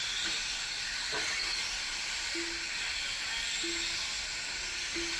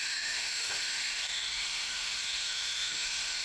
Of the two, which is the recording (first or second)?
first